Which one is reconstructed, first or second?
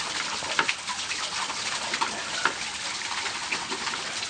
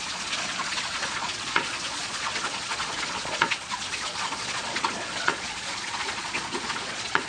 second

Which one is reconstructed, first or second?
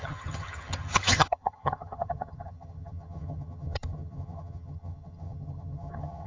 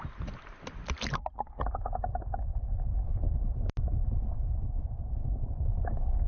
first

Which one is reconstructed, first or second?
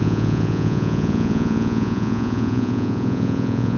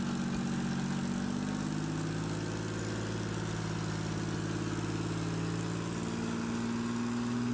first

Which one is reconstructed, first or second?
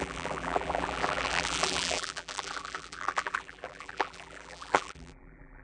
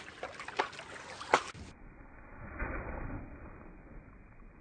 first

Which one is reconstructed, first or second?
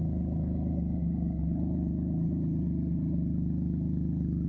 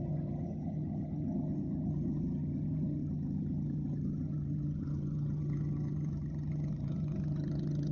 second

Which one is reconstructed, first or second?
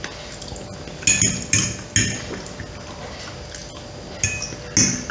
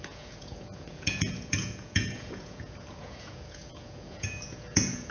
second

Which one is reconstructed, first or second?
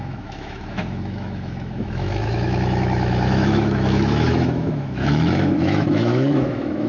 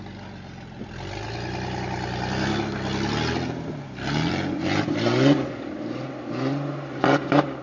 first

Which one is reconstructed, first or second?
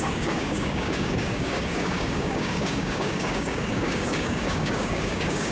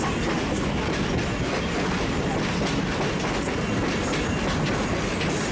first